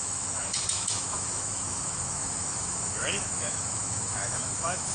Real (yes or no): no